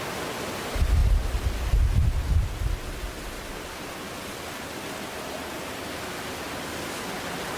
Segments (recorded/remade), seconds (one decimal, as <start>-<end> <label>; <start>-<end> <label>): 0.0-7.6 recorded